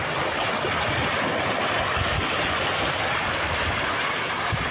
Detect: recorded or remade recorded